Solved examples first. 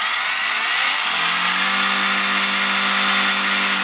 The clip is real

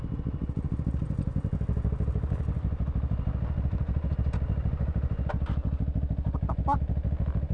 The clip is real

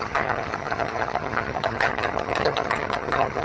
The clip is fake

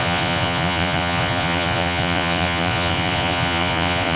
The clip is fake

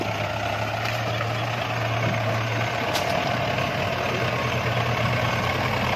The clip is real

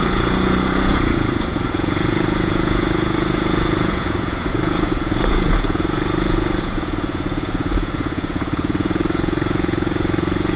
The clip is fake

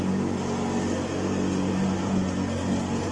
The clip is real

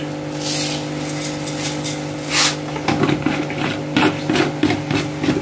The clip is real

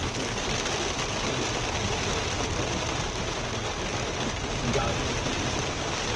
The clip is fake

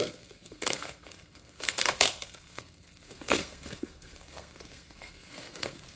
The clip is fake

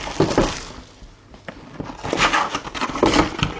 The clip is real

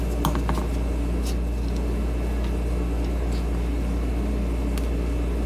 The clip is real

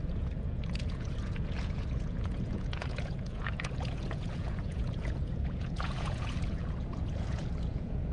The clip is fake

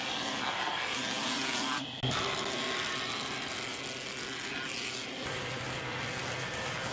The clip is real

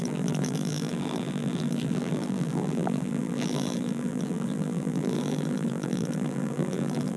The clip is fake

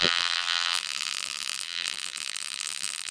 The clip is fake